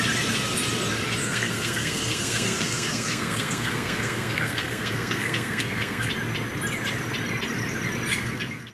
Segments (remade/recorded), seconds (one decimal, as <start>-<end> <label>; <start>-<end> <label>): 0.0-1.2 recorded; 1.2-6.1 remade; 6.1-8.1 recorded; 8.1-8.7 remade